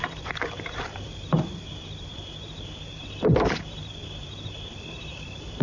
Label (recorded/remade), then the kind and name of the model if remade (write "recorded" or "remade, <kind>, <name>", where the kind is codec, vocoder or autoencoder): remade, vocoder, BigVGAN v2